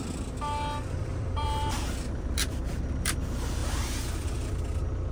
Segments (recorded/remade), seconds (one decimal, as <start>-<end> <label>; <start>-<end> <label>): 0.0-1.1 recorded; 1.1-3.2 remade; 3.2-3.6 recorded; 3.6-4.5 remade; 4.5-5.1 recorded